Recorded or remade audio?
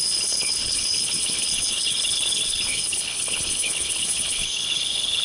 remade